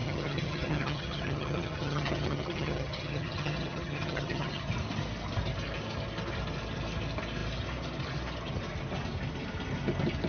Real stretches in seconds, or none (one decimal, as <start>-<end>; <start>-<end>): 4.7-10.3